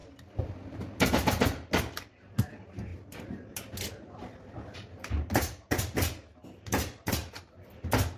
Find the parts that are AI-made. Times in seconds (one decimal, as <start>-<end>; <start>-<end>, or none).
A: none

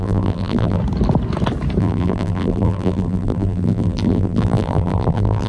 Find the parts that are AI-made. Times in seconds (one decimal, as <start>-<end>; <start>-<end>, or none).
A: 0.0-0.8; 1.8-5.5

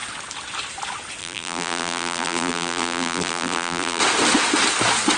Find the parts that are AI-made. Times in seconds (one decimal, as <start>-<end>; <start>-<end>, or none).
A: 1.2-4.0